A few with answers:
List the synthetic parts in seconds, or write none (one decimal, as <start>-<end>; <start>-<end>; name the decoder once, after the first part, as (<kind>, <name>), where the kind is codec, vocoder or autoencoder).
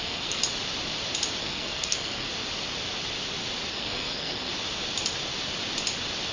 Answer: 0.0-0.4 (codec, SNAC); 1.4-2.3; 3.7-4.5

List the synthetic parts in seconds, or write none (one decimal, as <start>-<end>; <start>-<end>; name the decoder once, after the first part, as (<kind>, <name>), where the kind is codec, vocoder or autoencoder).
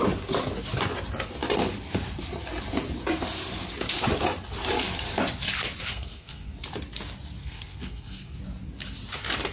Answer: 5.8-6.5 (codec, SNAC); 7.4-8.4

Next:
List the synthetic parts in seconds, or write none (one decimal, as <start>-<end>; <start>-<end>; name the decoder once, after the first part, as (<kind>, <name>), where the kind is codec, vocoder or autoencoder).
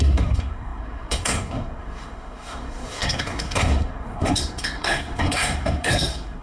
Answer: 0.0-6.4 (codec, SNAC)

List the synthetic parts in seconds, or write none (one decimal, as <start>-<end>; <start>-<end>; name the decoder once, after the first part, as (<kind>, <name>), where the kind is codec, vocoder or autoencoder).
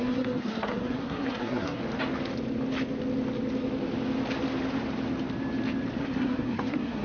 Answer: 0.0-1.8 (codec, SNAC); 6.0-7.0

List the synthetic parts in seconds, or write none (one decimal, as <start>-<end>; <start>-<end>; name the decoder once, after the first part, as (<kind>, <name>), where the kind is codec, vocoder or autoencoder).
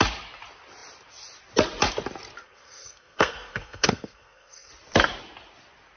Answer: 2.4-4.7 (codec, SNAC)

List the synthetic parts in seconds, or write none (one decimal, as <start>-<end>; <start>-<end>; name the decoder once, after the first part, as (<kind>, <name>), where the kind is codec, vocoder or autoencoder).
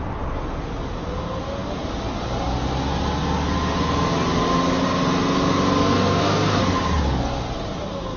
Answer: 5.9-6.7 (codec, SNAC)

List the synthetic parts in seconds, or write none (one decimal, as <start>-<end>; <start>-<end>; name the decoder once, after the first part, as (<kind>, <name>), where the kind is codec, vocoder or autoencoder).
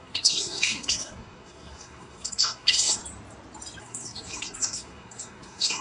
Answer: 0.0-3.0 (codec, SNAC); 3.8-5.8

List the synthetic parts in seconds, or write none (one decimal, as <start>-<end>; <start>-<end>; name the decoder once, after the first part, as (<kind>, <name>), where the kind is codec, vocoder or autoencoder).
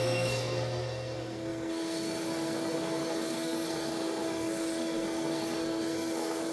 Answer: 0.0-6.5 (codec, SNAC)